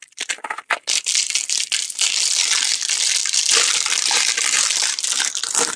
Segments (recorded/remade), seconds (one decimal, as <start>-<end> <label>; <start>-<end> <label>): 0.0-5.8 recorded